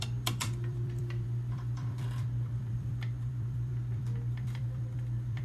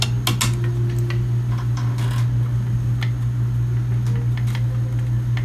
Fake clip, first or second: first